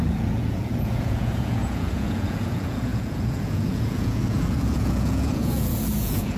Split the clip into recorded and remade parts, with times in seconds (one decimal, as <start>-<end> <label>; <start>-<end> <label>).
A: 0.0-6.4 remade